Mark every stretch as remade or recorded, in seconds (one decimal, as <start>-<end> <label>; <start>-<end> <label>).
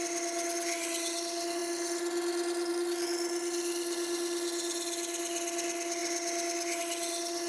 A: 0.0-7.5 recorded